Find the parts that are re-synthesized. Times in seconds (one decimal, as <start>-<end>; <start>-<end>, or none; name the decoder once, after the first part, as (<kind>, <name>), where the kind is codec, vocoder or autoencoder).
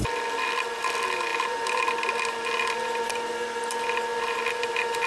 none